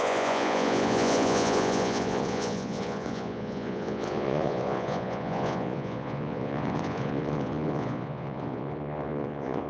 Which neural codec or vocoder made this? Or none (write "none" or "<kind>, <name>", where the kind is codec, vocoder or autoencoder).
vocoder, Vocos